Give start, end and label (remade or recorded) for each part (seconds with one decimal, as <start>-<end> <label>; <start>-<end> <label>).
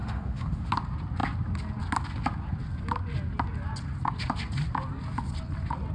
0.0-0.7 remade; 0.7-5.9 recorded